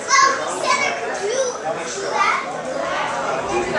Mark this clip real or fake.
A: real